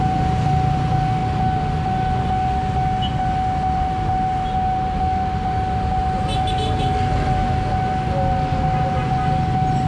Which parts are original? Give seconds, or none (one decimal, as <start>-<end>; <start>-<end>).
0.0-9.9